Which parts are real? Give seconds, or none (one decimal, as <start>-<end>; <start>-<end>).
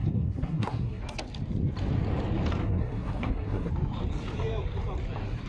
1.0-2.6; 3.7-5.5